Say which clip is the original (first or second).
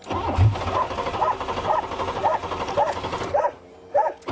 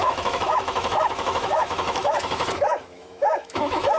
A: first